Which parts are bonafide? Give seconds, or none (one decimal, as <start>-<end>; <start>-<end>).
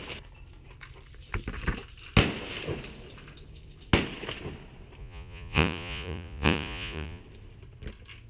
0.0-5.0; 7.2-8.3